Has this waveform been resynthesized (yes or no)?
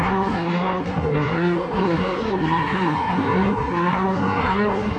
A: yes